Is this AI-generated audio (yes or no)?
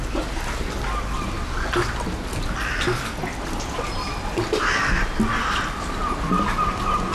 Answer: no